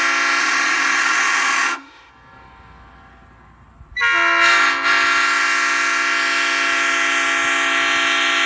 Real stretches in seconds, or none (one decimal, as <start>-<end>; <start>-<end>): 0.0-0.4; 2.1-8.5